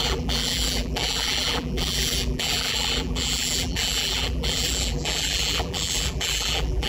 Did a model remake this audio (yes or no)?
yes